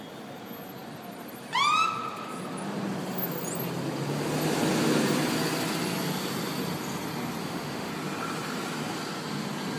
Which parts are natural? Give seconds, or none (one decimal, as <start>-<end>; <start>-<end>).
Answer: 0.0-7.4; 7.9-9.8